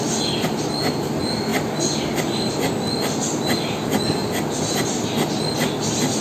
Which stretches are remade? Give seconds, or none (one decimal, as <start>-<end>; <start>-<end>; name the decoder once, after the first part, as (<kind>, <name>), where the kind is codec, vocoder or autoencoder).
none